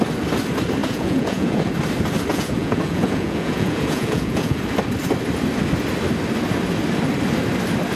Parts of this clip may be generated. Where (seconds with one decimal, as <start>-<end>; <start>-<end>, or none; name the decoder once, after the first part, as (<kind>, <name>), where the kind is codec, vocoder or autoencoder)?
0.8-1.7 (vocoder, Vocos); 2.3-4.6